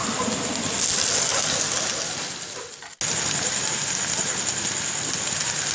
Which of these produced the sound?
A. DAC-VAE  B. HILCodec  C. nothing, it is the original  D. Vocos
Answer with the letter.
C